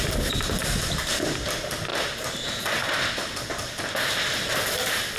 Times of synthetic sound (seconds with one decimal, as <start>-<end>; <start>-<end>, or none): none